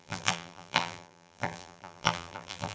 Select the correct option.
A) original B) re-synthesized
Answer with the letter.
B